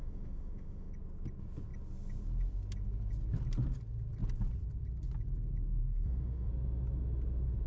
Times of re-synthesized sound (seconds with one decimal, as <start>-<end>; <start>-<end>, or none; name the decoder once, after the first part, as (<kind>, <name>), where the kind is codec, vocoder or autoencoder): 0.0-0.9 (autoencoder, DAC-VAE); 5.8-6.5